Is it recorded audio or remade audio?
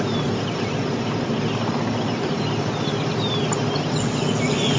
recorded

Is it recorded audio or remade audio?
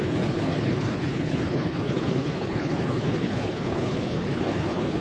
remade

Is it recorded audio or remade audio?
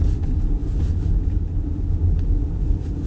recorded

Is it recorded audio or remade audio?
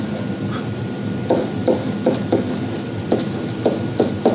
recorded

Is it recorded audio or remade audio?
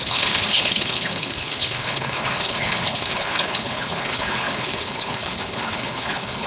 remade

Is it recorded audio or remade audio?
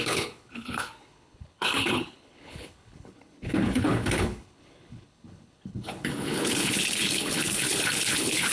remade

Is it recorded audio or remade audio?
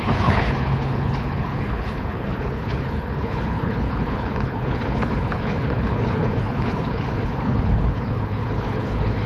remade